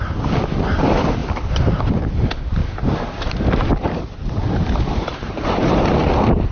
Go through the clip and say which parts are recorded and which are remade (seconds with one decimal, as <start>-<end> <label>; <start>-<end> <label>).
0.0-1.2 recorded; 1.2-1.7 remade; 1.7-2.6 recorded; 2.6-6.0 remade; 6.0-6.5 recorded